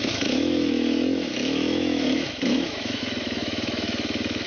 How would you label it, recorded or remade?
remade